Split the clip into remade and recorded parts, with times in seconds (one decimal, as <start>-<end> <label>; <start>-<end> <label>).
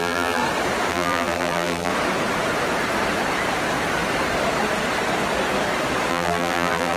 0.0-0.4 remade; 0.4-0.9 recorded; 0.9-1.9 remade; 1.9-6.1 recorded; 6.1-7.0 remade